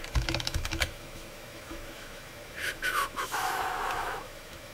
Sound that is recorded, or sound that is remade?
remade